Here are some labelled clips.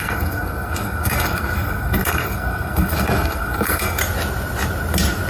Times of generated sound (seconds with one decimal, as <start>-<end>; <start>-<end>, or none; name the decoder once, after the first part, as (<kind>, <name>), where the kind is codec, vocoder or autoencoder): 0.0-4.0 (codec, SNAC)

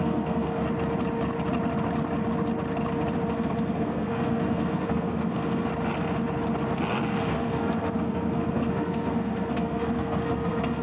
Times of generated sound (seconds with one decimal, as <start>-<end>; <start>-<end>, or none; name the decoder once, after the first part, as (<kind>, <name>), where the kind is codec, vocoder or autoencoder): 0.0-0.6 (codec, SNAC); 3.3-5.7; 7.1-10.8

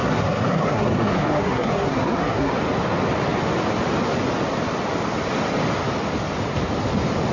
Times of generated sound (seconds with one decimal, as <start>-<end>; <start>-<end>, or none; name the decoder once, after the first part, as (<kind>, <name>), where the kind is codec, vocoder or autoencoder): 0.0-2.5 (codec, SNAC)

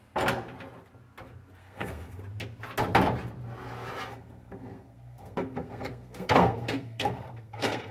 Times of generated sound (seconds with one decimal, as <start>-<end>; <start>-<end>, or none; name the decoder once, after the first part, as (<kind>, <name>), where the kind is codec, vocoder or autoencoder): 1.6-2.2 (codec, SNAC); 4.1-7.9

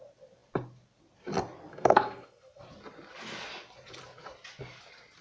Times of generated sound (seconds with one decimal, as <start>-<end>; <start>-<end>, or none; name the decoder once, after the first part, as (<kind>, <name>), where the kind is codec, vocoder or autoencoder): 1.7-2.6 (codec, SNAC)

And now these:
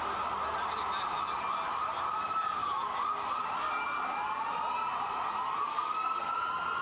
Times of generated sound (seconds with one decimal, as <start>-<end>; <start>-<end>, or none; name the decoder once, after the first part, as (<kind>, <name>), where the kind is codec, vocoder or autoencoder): 5.6-6.3 (codec, SNAC)

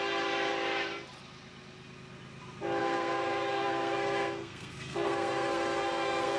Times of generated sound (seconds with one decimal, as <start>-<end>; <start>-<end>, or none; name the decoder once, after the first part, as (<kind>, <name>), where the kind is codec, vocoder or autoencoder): 2.8-6.4 (codec, SNAC)